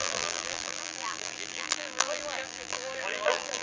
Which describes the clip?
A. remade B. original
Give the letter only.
A